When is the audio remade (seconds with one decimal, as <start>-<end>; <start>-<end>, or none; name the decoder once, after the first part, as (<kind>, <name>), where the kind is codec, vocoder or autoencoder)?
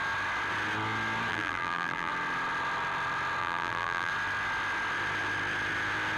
1.3-2.1 (vocoder, BigVGAN v2); 3.4-4.1